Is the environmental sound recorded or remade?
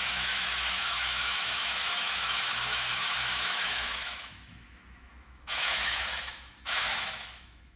remade